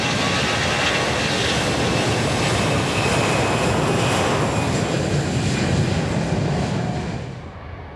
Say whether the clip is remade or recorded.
recorded